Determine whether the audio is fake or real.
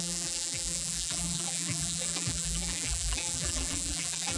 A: fake